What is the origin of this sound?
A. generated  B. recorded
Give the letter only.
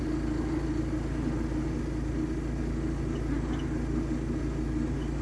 B